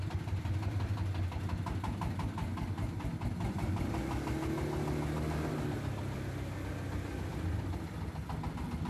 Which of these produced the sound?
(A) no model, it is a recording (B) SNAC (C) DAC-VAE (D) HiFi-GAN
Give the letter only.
A